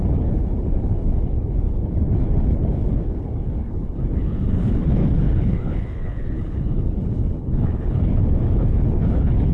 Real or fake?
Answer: fake